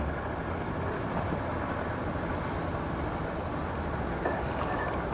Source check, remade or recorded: recorded